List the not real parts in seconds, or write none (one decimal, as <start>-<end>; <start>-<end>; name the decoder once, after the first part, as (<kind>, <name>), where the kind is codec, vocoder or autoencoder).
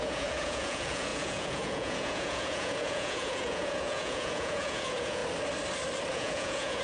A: 0.0-5.2 (vocoder, Vocos); 6.1-6.8